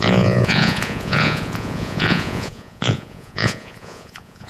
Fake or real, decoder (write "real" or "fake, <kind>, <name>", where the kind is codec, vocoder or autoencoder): fake, vocoder, Vocos